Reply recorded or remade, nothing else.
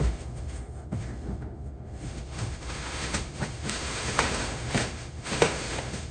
remade